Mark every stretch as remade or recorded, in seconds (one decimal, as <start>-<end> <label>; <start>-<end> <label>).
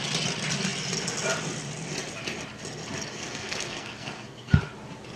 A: 0.0-3.1 recorded; 3.1-4.6 remade; 4.6-5.2 recorded